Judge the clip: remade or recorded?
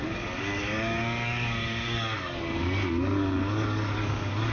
remade